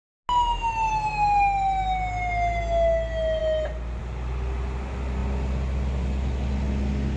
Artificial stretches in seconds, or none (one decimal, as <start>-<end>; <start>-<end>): none